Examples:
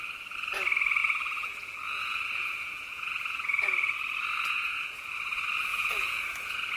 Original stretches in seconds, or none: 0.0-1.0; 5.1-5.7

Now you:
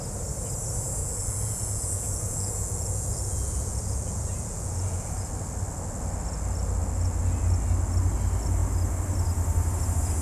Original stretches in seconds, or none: 0.0-1.0; 5.3-10.2

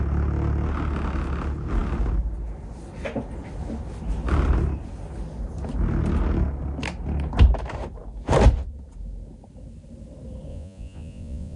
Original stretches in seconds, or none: 0.0-10.5

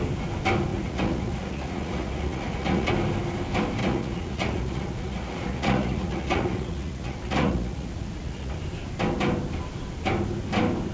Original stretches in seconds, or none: 0.0-0.7; 2.9-3.8; 8.5-10.9

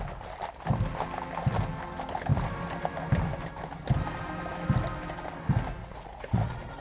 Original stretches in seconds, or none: 0.0-5.8

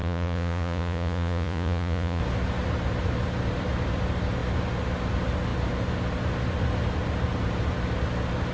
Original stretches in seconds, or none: 2.2-8.5

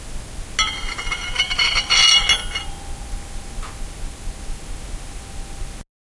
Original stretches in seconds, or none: 0.0-6.2